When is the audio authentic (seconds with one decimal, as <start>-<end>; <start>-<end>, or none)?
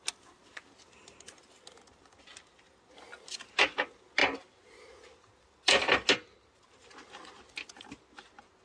0.0-8.6